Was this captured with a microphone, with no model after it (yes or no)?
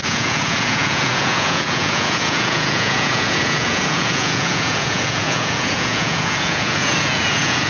no